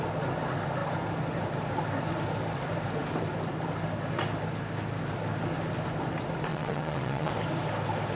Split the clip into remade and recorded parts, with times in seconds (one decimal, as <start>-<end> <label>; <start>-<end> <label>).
0.0-6.5 recorded; 6.5-7.3 remade; 7.3-8.1 recorded